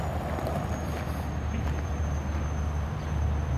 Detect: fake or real real